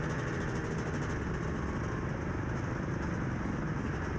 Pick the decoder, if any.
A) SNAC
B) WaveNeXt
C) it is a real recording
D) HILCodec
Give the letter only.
C